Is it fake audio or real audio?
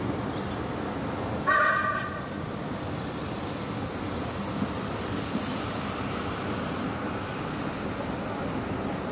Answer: real